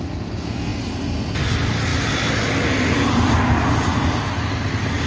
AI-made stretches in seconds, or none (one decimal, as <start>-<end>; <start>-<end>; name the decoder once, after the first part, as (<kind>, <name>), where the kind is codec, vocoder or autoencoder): none